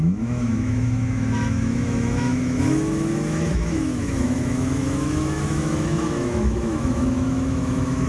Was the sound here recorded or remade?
remade